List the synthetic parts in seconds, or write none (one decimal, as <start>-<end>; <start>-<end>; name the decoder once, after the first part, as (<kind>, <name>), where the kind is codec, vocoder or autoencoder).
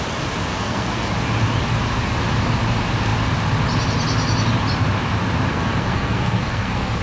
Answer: 0.5-1.1 (codec, SNAC); 5.5-7.0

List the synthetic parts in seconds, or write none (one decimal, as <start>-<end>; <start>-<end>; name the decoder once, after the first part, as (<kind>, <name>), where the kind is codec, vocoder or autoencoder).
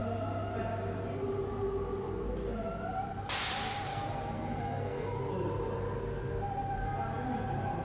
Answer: 3.9-5.2 (codec, SNAC)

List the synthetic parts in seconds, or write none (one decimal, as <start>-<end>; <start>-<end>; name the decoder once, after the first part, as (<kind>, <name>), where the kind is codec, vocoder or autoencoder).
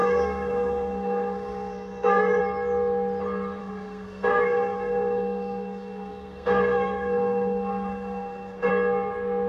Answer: 0.0-2.4 (codec, SNAC); 3.6-8.7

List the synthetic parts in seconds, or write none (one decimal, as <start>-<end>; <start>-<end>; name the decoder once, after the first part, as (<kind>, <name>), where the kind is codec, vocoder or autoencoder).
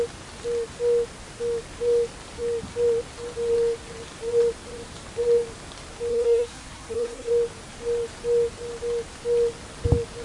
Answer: 6.1-7.3 (codec, SNAC)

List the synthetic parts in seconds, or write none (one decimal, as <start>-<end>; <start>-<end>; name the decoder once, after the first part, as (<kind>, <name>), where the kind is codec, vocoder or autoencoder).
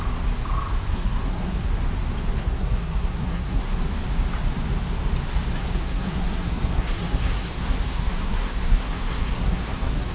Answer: 0.9-1.7 (codec, SNAC); 2.4-3.6; 5.6-10.1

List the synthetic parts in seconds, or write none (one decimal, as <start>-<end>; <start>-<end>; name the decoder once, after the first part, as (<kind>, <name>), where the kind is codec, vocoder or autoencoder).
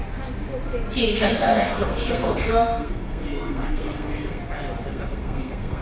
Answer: 1.0-4.4 (codec, SNAC); 4.9-5.8